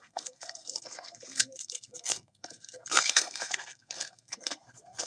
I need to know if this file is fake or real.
fake